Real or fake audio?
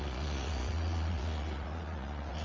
fake